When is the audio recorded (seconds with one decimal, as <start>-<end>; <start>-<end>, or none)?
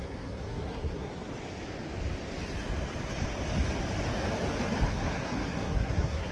1.1-4.9